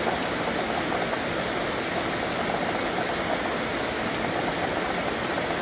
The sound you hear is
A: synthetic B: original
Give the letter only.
B